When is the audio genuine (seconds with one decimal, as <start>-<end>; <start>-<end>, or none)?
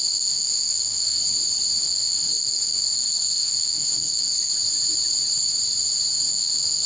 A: 1.2-1.8; 4.5-6.3